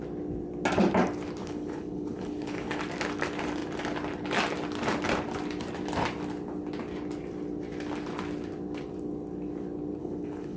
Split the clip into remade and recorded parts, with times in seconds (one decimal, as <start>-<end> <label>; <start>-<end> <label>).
0.0-1.4 recorded; 1.4-2.8 remade; 2.8-10.0 recorded; 10.0-10.6 remade